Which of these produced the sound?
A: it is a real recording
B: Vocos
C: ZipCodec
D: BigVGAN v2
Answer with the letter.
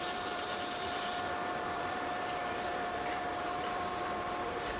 D